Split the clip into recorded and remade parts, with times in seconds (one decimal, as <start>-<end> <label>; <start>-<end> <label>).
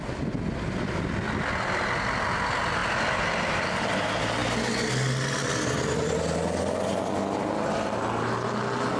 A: 0.0-9.0 recorded